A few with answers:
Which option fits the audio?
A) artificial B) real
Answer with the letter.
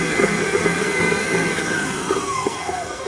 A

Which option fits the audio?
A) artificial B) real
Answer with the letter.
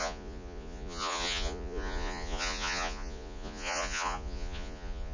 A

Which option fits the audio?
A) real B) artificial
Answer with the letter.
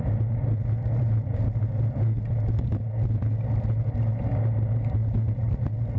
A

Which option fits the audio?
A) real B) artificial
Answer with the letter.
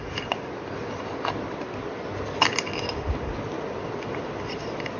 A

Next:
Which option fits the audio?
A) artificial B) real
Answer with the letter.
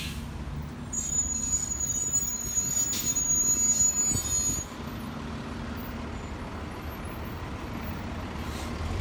B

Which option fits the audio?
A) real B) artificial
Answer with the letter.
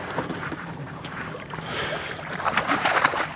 B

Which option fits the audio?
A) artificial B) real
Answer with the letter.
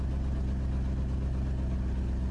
B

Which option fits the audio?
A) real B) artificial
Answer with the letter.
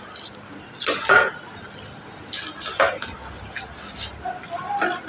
A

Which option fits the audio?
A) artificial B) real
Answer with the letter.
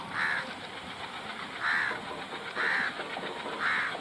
A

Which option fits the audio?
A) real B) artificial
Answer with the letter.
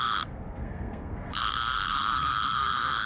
B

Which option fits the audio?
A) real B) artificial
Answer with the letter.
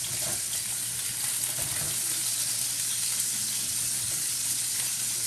A